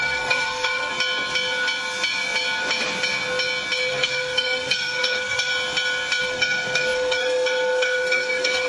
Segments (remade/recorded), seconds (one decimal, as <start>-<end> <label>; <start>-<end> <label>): 0.0-0.9 remade; 0.9-3.9 recorded; 3.9-5.5 remade; 5.5-6.2 recorded; 6.2-8.7 remade